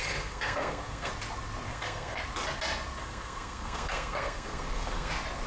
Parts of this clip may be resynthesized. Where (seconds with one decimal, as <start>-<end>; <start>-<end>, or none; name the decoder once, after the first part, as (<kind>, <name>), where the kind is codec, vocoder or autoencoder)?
0.0-1.1 (codec, SNAC); 1.7-2.2; 3.0-5.1